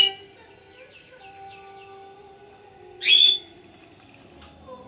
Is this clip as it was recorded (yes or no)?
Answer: yes